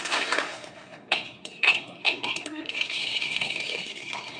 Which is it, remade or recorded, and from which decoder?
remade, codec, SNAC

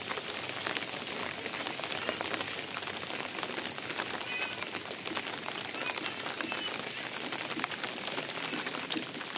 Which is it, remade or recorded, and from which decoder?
recorded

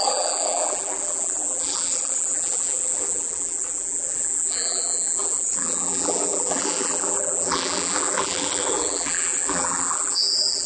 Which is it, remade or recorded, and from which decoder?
remade, vocoder, BigVGAN v2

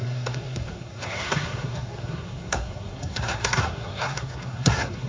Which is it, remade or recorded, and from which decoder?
remade, codec, SNAC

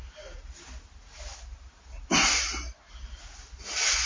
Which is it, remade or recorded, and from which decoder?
recorded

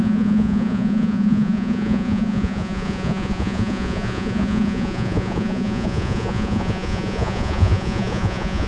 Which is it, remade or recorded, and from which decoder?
remade, vocoder, Vocos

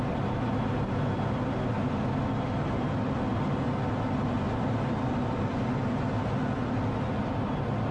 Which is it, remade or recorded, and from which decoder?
recorded